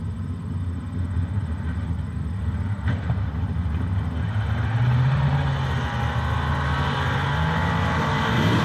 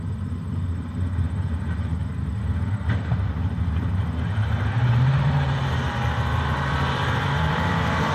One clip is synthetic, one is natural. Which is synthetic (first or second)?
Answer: second